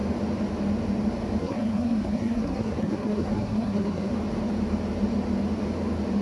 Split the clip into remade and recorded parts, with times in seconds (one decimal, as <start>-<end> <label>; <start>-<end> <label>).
0.0-1.4 recorded; 1.4-4.1 remade; 4.1-6.2 recorded